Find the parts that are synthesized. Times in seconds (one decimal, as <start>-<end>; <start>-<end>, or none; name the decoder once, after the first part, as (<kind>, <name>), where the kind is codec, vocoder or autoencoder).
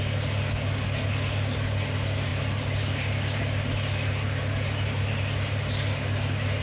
none